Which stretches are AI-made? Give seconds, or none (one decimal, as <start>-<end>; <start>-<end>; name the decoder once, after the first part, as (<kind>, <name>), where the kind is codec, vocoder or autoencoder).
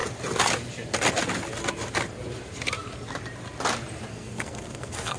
4.1-5.2 (codec, SNAC)